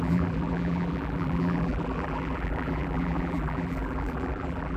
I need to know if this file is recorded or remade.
remade